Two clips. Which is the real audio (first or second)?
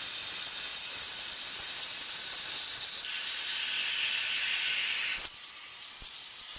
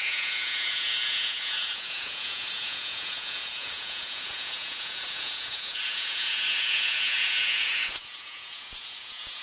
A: first